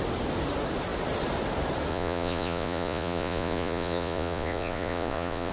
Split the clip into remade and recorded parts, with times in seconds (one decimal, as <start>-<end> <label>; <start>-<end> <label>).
0.0-1.9 recorded; 1.9-5.5 remade